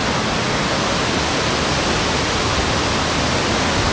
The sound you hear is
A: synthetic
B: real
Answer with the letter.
B